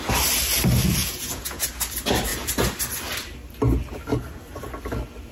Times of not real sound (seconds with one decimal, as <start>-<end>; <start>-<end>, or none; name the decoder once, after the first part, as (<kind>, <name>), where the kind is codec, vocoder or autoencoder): 1.0-1.7 (vocoder, Vocos)